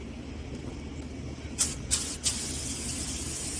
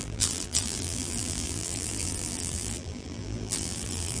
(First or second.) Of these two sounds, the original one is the first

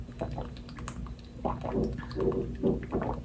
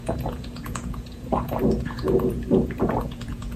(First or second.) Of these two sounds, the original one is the first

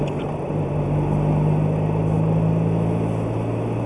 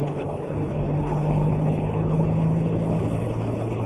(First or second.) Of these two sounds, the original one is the first